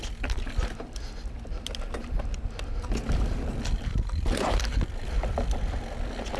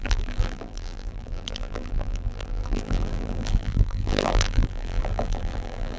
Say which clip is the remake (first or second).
second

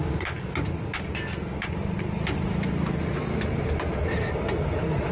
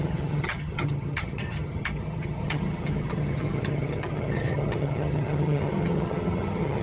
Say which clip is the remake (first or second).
second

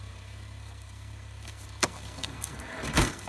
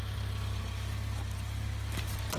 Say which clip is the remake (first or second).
first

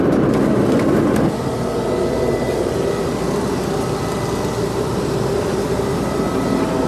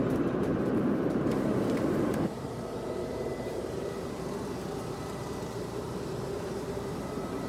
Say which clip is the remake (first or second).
second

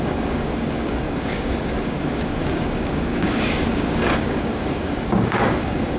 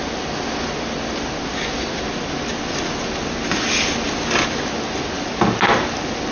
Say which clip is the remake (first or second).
first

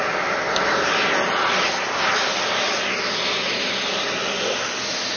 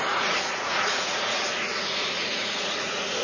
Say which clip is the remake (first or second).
second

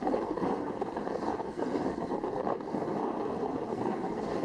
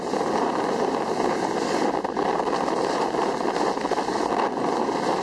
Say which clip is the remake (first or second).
first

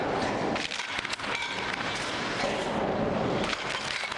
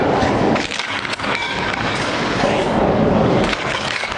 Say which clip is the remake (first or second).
second